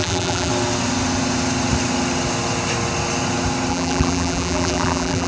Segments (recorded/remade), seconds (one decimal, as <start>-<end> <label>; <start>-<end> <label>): 0.0-0.5 remade; 0.5-3.7 recorded; 3.7-5.3 remade